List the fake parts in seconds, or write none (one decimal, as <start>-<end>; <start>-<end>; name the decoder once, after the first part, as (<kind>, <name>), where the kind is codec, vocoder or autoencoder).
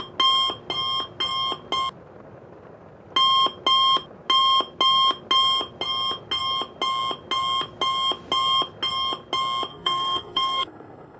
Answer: 9.7-11.2 (codec, SNAC)